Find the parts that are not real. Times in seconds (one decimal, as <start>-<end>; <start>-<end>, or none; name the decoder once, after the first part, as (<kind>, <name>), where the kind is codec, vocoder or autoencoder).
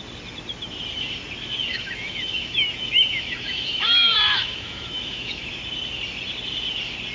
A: 1.7-5.5 (autoencoder, DAC-VAE)